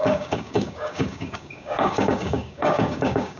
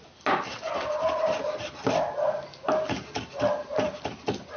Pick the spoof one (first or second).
first